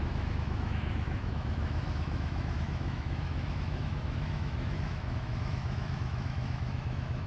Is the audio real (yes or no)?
no